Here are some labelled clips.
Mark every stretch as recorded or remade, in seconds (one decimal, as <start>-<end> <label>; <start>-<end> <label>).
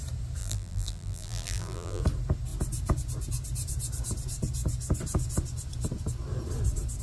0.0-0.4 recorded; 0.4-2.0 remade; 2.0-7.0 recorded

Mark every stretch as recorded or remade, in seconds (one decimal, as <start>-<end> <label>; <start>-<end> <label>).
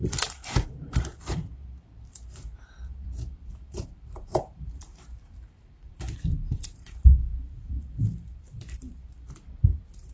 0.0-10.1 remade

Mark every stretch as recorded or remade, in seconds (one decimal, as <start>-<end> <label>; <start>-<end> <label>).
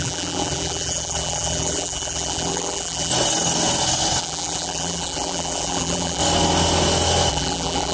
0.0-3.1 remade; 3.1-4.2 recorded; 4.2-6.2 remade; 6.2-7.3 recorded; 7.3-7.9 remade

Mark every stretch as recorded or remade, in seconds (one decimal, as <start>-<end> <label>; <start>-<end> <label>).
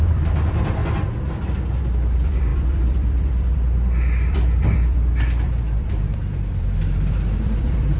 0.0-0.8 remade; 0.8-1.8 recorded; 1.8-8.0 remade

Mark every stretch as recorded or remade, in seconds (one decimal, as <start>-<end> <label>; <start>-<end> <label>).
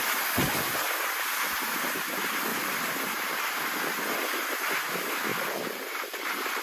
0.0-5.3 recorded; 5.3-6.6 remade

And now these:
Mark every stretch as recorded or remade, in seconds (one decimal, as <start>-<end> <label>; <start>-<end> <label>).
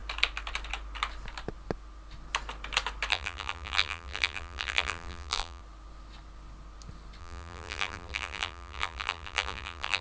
0.0-3.1 recorded; 3.1-5.6 remade; 5.6-7.2 recorded; 7.2-10.0 remade